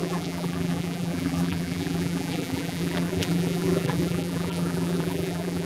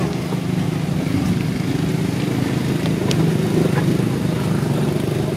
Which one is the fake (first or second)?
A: first